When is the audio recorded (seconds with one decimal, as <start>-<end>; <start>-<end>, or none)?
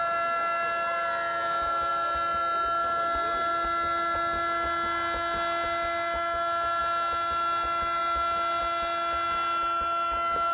0.0-10.5